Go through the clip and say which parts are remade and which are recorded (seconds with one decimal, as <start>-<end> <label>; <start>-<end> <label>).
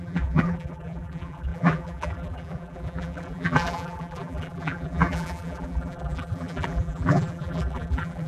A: 0.0-8.3 remade